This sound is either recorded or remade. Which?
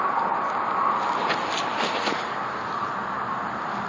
recorded